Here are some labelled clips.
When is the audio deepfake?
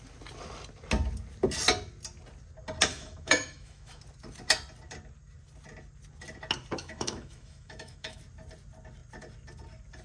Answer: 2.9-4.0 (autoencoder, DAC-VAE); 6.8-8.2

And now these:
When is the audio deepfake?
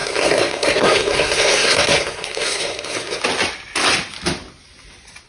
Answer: 0.0-3.2 (codec, SNAC)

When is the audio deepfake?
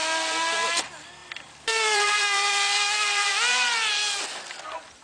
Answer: 0.0-4.0 (vocoder, BigVGAN v2); 4.6-5.0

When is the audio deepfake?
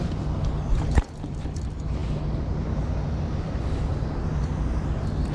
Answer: none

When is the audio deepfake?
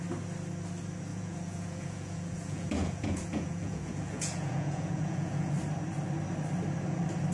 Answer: 1.1-5.5 (vocoder, Vocos)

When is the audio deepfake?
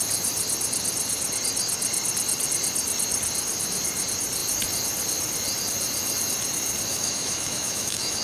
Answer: 6.9-8.2 (autoencoder, DAC-VAE)